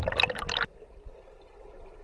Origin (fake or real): real